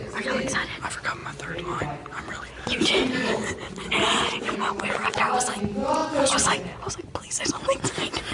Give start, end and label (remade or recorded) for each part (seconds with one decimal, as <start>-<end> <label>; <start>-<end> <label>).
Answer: 0.0-8.3 recorded